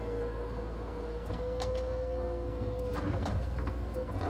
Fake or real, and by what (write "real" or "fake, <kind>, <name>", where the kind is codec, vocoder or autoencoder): fake, codec, SNAC